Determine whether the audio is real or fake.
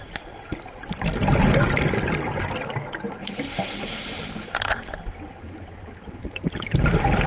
real